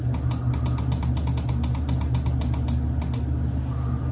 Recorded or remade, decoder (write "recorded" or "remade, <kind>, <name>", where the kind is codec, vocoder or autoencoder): recorded